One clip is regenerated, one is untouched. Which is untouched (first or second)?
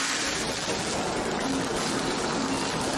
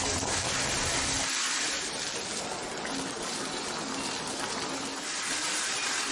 first